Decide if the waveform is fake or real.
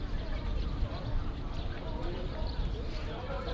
real